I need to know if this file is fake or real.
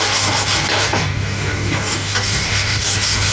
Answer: fake